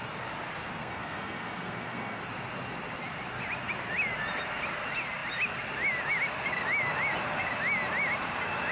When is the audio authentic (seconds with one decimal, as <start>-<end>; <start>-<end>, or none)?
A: 0.0-0.8; 2.2-8.7